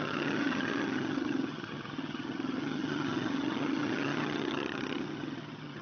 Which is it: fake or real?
fake